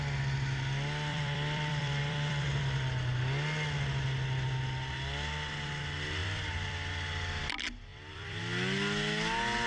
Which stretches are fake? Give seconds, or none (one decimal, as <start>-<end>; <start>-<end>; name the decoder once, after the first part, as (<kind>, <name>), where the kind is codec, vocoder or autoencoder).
1.1-2.6 (vocoder, BigVGAN v2); 6.2-6.9; 7.9-8.4

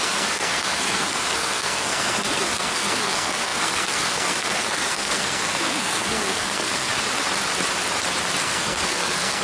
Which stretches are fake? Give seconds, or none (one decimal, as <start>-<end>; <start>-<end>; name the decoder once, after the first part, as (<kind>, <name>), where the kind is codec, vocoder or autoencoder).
0.0-6.9 (codec, SNAC); 8.4-9.4

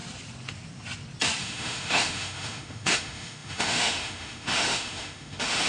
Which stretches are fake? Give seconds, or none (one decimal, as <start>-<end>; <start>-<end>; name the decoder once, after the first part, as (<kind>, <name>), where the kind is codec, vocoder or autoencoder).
1.4-5.7 (autoencoder, DAC-VAE)

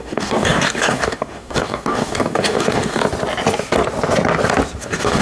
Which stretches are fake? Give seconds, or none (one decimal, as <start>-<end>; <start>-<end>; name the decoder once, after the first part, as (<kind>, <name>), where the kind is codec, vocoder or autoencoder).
0.0-3.0 (codec, DAC); 4.8-5.2

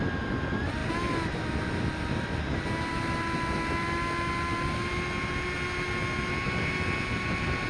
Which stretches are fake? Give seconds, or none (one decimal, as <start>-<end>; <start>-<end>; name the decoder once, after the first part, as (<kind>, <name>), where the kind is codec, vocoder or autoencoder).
none

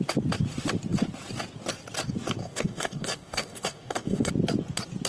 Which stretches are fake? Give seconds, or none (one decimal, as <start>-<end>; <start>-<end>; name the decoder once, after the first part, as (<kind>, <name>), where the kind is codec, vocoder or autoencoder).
2.4-4.3 (codec, DAC)